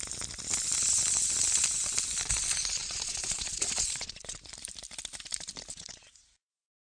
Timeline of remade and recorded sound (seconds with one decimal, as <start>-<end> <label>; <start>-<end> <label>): 0.0-2.8 recorded; 2.8-4.4 remade; 4.4-5.7 recorded; 5.7-6.5 remade; 6.5-6.9 recorded